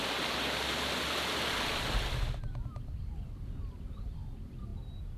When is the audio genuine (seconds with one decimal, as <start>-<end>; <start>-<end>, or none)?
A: 0.0-5.2